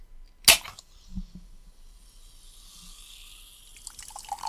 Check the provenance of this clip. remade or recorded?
recorded